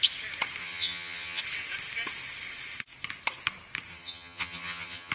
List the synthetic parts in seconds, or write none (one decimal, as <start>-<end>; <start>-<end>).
0.6-1.4; 3.9-5.1